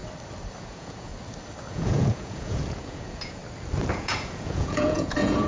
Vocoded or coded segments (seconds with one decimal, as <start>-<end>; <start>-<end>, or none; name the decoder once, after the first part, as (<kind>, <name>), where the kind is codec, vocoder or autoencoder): 0.6-1.1 (vocoder, Vocos); 1.7-3.4; 3.9-5.5